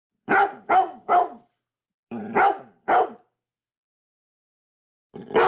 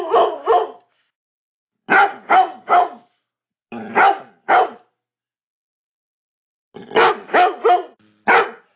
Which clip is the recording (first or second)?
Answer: second